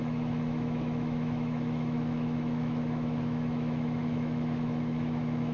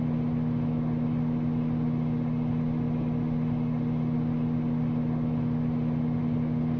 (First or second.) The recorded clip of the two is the second